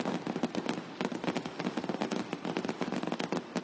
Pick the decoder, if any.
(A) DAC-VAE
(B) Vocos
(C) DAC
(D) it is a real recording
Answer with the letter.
D